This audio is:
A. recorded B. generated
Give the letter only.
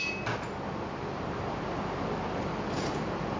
A